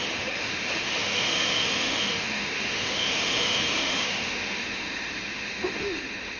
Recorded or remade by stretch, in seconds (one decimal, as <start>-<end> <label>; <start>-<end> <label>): 0.0-6.4 remade